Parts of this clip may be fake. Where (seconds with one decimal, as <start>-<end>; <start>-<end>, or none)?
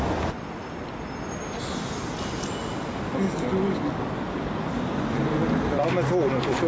none